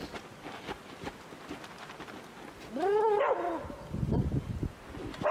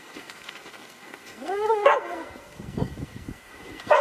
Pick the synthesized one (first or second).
second